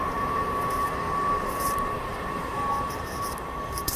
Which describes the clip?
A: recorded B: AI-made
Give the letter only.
B